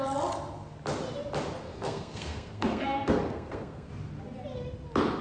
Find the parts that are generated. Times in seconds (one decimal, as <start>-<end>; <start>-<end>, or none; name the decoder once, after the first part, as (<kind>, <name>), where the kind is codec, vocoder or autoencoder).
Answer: 1.7-3.9 (codec, SNAC)

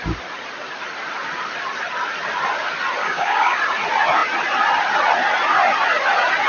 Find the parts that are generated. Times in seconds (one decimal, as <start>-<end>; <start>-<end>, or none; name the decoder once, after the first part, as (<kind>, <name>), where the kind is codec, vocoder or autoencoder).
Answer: 3.0-3.6 (codec, DAC)

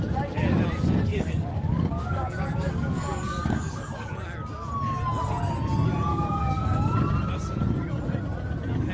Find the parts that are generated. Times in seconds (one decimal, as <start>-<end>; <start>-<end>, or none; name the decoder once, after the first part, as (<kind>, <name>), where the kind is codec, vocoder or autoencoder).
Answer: 1.1-4.1 (codec, DAC); 6.1-6.9

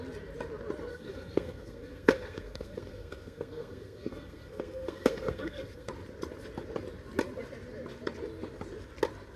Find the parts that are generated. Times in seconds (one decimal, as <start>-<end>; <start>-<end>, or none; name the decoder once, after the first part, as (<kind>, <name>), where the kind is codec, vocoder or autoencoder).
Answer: 0.9-5.9 (codec, SNAC)